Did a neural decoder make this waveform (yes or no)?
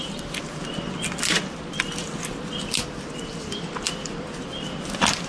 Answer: no